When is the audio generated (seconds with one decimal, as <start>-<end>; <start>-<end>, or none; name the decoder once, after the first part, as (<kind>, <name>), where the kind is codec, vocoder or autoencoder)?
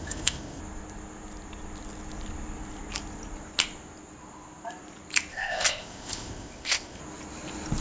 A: 0.0-0.6 (codec, ZipCodec); 5.3-7.0